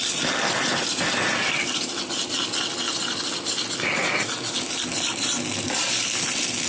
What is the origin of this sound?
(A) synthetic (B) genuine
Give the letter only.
B